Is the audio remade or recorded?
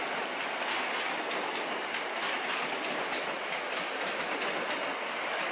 recorded